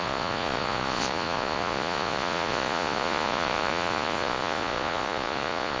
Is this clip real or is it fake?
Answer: fake